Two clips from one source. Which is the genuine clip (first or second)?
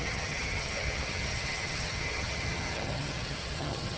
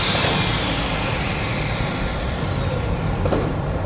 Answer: second